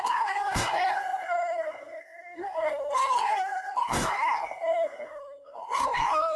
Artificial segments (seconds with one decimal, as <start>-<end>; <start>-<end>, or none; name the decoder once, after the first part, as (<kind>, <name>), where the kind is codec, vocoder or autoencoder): 0.0-6.4 (codec, SNAC)